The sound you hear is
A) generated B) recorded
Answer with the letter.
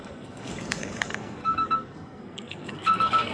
A